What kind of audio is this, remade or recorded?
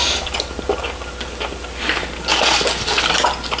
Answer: recorded